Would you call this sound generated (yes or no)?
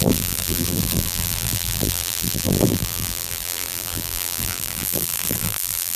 yes